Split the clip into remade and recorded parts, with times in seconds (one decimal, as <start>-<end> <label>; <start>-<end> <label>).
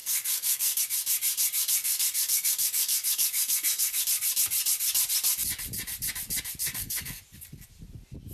0.0-0.8 remade; 0.8-1.8 recorded; 1.8-4.0 remade; 4.0-6.6 recorded; 6.6-7.2 remade; 7.2-8.3 recorded